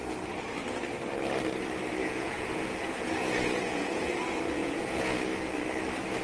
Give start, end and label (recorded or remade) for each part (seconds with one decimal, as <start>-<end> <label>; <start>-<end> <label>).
0.0-2.0 recorded; 2.0-4.1 remade; 4.1-4.6 recorded; 4.6-5.3 remade; 5.3-6.2 recorded